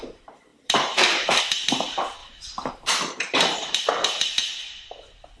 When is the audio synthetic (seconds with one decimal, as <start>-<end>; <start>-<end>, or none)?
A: 0.5-1.4; 2.2-3.9